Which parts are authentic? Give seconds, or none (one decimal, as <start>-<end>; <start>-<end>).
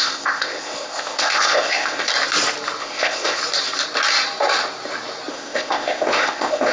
2.1-2.8; 3.4-5.3